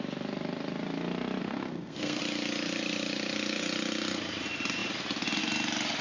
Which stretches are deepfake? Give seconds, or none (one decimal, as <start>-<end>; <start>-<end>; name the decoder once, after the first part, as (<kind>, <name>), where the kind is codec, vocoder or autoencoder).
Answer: 1.4-2.2 (codec, SNAC)

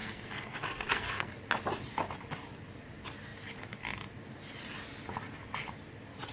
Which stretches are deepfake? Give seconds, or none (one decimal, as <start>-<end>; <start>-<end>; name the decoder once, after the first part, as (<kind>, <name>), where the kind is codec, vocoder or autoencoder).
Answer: 0.0-1.3 (codec, SNAC)

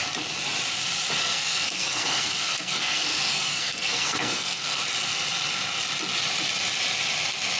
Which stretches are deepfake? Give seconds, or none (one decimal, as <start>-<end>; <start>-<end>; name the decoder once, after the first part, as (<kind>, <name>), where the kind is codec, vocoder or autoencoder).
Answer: 1.2-4.8 (codec, SNAC)